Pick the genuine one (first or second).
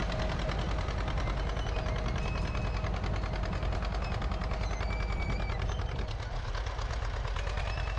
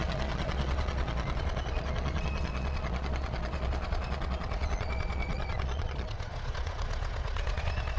first